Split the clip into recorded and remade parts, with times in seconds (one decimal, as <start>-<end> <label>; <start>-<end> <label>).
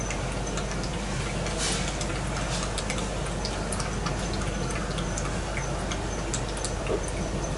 0.0-7.6 recorded